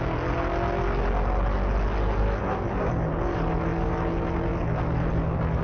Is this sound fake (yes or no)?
no